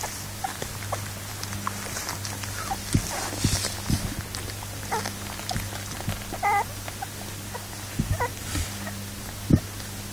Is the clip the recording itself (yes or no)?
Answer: yes